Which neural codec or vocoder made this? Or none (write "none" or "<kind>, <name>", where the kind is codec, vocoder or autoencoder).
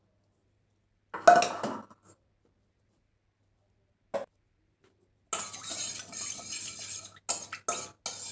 none